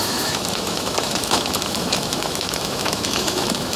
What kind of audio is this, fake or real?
fake